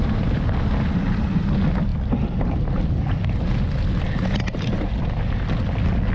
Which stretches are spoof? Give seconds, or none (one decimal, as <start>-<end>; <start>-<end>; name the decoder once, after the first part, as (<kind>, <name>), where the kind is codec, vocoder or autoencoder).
none